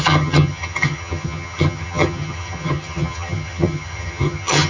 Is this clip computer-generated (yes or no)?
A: yes